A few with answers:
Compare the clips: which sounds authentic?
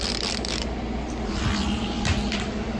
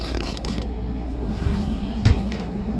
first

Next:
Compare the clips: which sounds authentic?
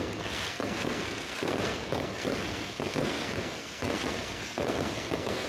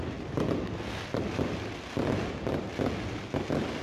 second